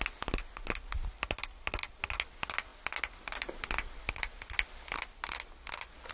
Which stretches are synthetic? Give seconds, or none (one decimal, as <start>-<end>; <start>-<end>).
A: none